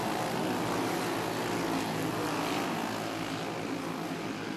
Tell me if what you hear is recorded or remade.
recorded